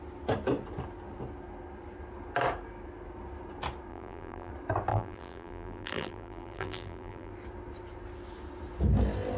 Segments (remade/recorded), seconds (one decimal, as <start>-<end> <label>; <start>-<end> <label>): 0.0-3.9 recorded; 3.9-4.5 remade; 4.5-4.9 recorded; 4.9-7.3 remade; 7.3-9.4 recorded